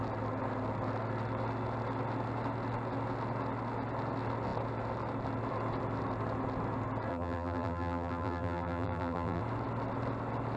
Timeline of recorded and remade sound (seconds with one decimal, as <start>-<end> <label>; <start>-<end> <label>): 0.0-7.1 recorded; 7.1-9.4 remade; 9.4-10.6 recorded